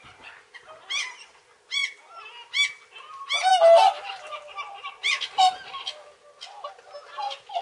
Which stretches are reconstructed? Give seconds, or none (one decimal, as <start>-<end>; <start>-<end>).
3.5-4.4